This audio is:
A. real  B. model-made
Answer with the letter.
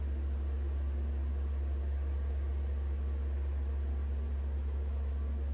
A